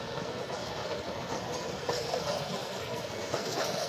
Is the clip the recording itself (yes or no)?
no